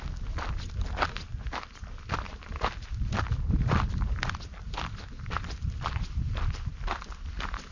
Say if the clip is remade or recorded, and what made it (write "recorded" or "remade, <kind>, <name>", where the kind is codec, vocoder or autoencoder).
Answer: recorded